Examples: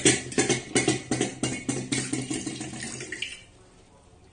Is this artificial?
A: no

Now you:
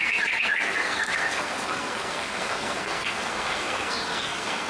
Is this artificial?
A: yes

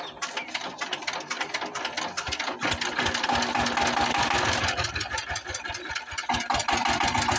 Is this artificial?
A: no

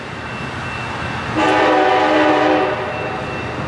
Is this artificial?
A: no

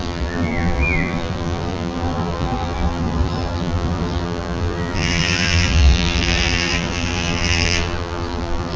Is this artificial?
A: yes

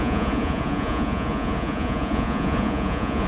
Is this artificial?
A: yes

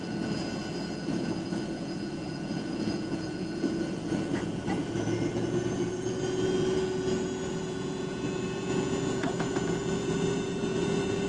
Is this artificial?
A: yes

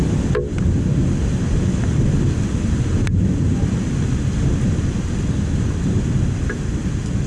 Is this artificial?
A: no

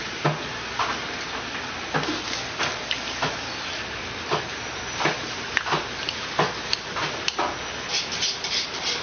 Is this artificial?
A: no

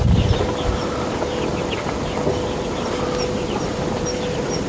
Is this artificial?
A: no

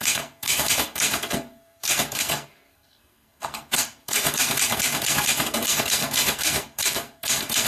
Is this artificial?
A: yes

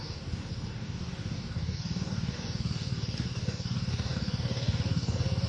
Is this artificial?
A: yes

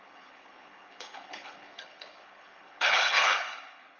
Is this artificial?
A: yes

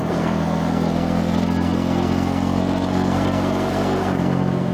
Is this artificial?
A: yes